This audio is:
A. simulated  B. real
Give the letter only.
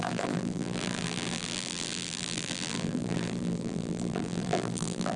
A